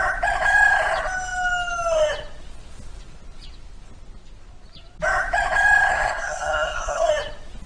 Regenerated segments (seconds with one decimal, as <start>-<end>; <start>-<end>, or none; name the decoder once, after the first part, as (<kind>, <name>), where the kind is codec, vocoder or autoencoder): 5.9-7.1 (codec, SNAC)